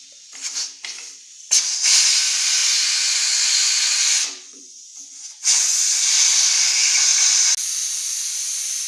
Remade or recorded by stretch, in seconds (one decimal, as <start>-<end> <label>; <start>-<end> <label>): 0.0-2.6 recorded; 2.6-6.0 remade; 6.0-8.9 recorded